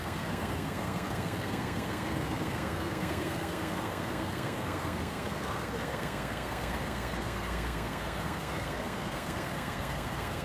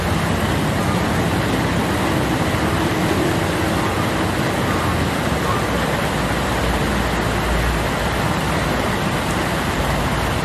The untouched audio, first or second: second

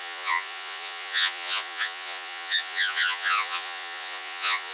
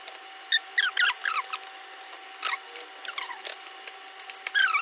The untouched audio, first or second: second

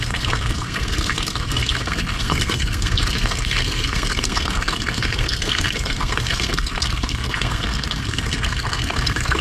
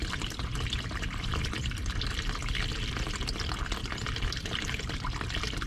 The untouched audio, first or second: second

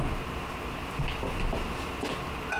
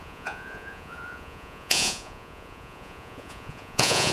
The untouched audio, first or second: first